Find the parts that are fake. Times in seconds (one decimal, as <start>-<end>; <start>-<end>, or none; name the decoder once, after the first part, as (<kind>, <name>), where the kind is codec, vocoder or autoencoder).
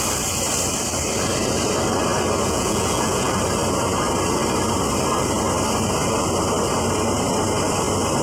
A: 2.4-3.3 (vocoder, Vocos)